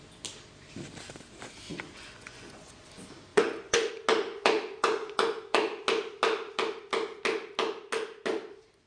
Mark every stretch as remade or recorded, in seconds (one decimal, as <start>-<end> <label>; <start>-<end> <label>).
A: 0.0-1.7 recorded; 1.7-2.8 remade; 2.8-3.3 recorded; 3.3-3.9 remade; 3.9-4.3 recorded; 4.3-5.8 remade; 5.8-8.9 recorded